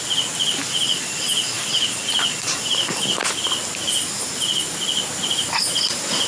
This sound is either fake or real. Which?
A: real